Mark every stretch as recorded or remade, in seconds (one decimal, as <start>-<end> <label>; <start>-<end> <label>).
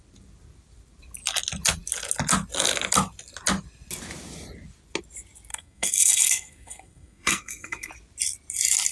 0.0-5.5 recorded; 5.5-7.9 remade; 7.9-8.9 recorded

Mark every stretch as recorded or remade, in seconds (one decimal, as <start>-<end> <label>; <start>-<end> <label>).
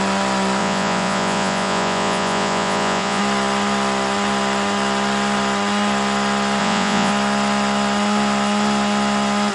0.0-0.6 recorded; 0.6-3.2 remade; 3.2-6.6 recorded; 6.6-7.1 remade; 7.1-9.5 recorded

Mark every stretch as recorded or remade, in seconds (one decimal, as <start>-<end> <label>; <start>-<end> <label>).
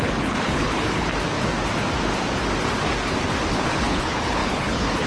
0.0-1.1 remade; 1.1-3.5 recorded; 3.5-5.1 remade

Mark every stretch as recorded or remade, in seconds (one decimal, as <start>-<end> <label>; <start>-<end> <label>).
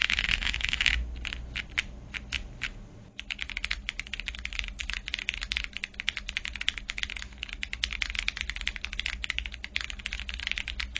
0.0-0.9 remade; 0.9-11.0 recorded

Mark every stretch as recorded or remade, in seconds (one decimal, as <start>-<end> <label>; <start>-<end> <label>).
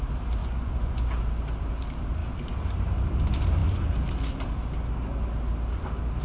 0.0-0.4 recorded; 0.4-1.0 remade; 1.0-6.2 recorded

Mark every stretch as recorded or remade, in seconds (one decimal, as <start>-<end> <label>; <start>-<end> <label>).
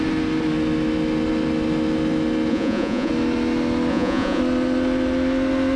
0.0-2.5 recorded; 2.5-3.1 remade; 3.1-3.9 recorded; 3.9-4.4 remade; 4.4-5.8 recorded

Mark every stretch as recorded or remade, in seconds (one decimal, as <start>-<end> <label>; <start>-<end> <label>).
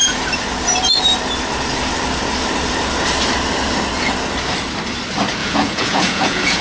0.0-5.4 recorded; 5.4-6.6 remade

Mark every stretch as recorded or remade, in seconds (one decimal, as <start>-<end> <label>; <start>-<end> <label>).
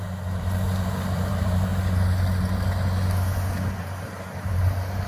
0.0-1.7 remade; 1.7-3.8 recorded; 3.8-5.1 remade